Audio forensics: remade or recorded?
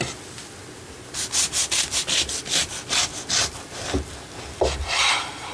recorded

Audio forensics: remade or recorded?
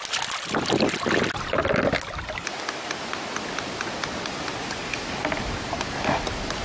recorded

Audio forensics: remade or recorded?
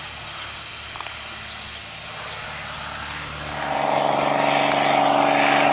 recorded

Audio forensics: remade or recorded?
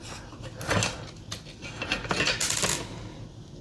recorded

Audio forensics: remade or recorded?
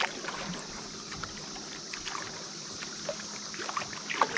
recorded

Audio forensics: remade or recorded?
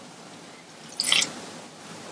recorded